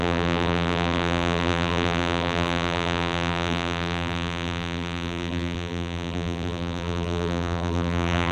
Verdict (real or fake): fake